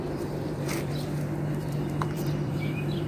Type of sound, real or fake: fake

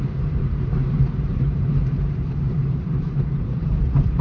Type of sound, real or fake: fake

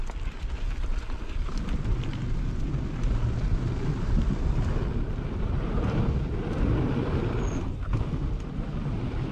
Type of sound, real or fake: real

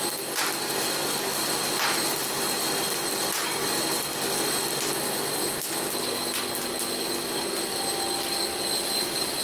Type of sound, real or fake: real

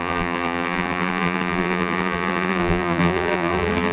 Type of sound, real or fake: fake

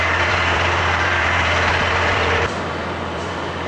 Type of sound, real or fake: fake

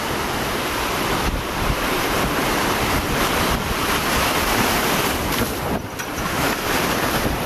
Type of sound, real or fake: fake